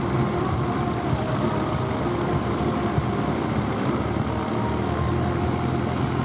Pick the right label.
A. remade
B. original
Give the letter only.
B